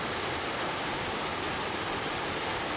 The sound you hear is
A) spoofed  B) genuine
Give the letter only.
B